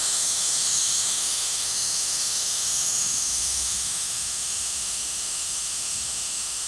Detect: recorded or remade remade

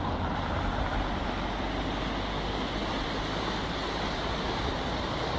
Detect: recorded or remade recorded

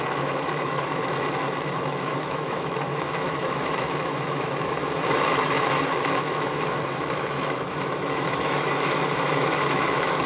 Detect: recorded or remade remade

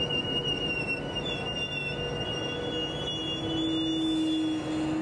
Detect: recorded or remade recorded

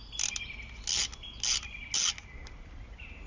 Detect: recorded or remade recorded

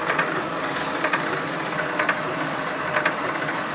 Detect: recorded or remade recorded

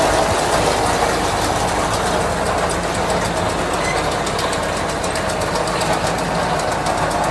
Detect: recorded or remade recorded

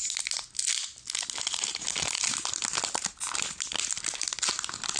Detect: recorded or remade recorded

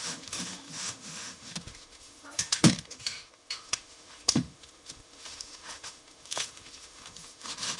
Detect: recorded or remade remade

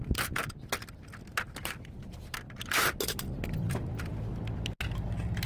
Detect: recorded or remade recorded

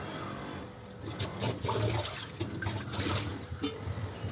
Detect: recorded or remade recorded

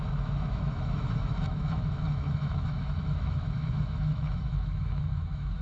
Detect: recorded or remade remade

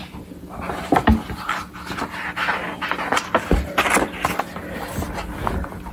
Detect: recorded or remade recorded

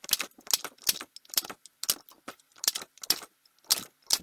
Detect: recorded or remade recorded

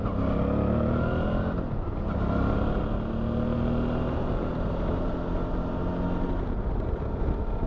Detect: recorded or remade recorded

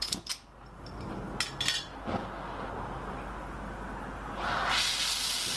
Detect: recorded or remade recorded